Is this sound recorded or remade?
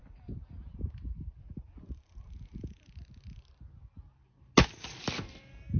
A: recorded